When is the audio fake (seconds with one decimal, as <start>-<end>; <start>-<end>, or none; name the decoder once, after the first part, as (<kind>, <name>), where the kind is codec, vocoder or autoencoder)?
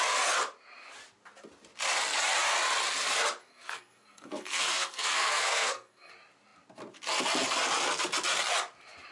3.4-6.1 (codec, SNAC)